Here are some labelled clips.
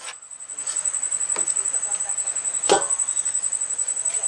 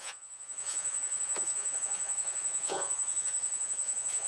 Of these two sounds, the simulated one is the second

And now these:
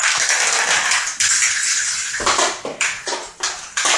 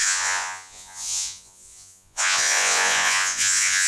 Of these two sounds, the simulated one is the second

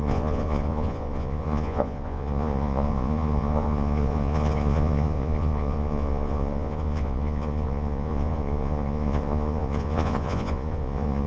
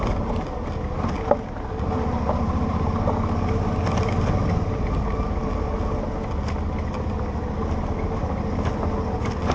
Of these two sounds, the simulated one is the first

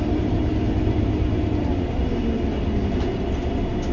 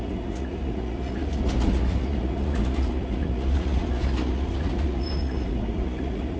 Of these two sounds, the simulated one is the second